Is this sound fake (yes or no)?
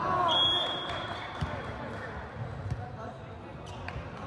no